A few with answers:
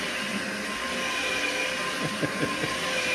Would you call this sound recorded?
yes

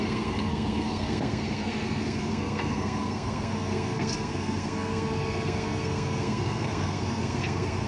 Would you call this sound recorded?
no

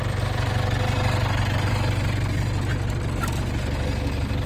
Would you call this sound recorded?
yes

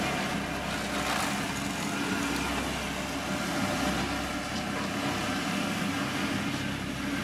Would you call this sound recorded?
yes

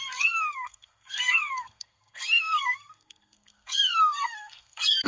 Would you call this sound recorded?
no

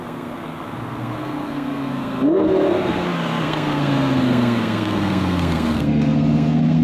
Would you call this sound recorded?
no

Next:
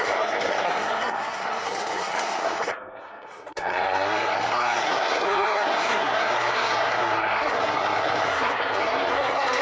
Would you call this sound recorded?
no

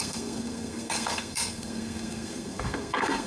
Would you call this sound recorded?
no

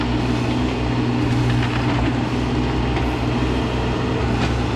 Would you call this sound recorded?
yes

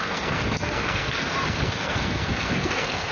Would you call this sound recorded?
no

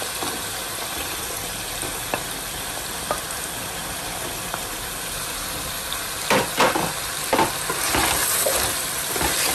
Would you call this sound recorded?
yes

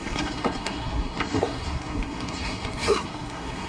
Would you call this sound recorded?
no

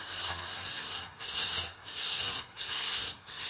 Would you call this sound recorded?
no